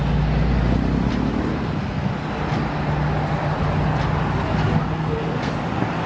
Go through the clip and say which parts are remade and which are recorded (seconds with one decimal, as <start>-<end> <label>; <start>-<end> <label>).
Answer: 0.0-1.5 recorded; 1.5-2.1 remade; 2.1-4.9 recorded; 4.9-5.5 remade; 5.5-6.1 recorded